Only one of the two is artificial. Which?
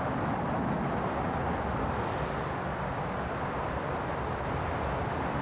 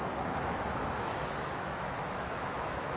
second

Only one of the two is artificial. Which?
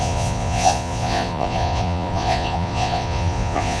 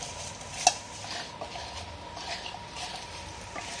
first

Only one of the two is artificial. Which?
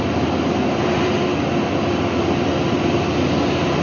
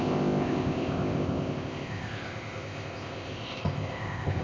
second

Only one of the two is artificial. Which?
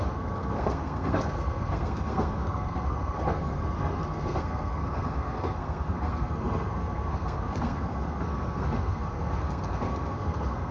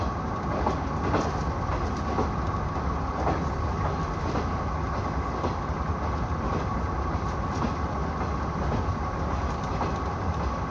first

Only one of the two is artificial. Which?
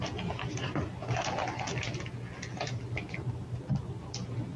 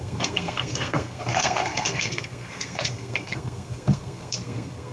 second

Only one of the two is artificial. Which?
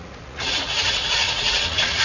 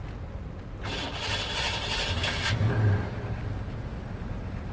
first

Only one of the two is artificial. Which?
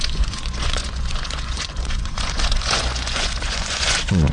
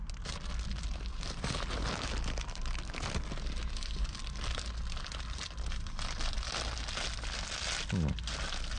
first